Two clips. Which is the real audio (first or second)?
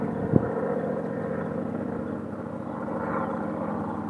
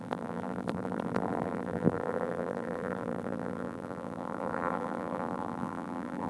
first